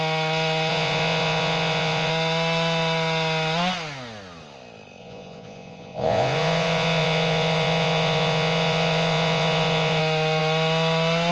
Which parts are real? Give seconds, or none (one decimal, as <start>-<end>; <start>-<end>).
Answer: 0.0-0.7; 2.1-5.0; 10.0-11.3